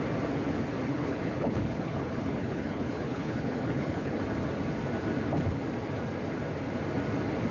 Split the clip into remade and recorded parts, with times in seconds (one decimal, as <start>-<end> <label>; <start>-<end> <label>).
0.0-0.9 recorded; 0.9-4.2 remade; 4.2-7.5 recorded